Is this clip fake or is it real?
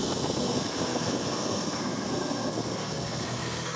fake